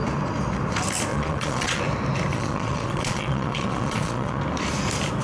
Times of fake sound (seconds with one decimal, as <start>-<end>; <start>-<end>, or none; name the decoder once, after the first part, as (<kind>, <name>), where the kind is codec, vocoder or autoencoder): 1.1-1.8 (vocoder, Vocos); 2.3-4.4